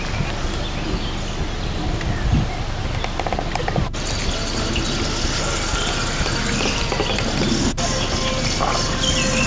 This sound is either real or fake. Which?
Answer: real